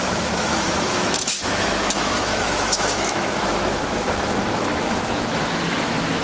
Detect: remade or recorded remade